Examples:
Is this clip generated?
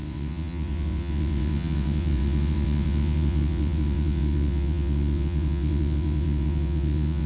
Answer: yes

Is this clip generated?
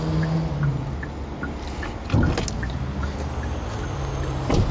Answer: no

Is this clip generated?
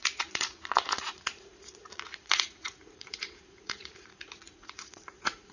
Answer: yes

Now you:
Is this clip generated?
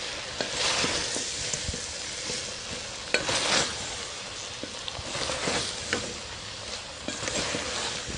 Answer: no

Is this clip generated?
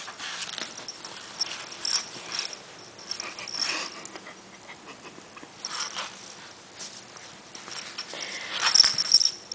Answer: no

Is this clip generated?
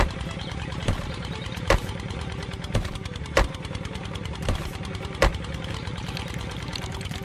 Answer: yes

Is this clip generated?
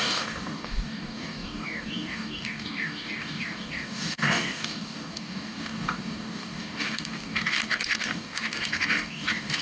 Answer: yes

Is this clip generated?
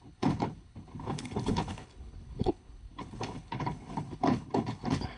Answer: yes